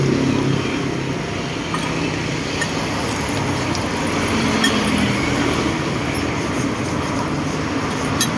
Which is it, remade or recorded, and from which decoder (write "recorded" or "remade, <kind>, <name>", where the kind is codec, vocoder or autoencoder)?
recorded